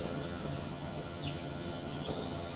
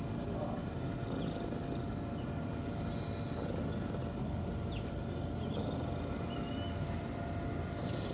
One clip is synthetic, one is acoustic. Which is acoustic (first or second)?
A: second